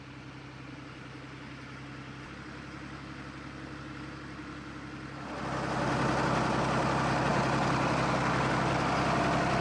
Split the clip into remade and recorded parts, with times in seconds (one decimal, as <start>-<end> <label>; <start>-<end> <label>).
0.0-9.6 recorded